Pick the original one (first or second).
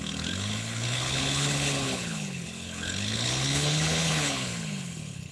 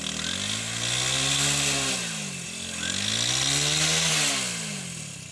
second